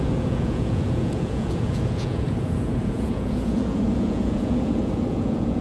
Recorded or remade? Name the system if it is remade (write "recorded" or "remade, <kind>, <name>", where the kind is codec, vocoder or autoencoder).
remade, vocoder, Vocos